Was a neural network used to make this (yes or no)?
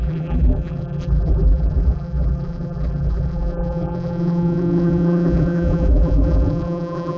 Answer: yes